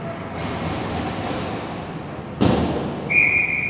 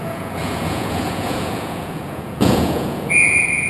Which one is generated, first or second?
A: second